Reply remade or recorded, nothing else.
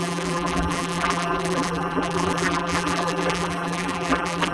remade